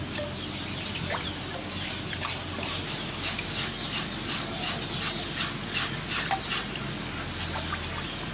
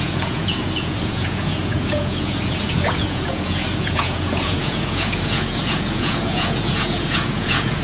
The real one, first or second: first